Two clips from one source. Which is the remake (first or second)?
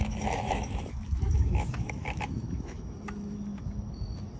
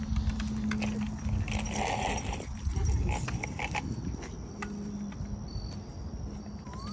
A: first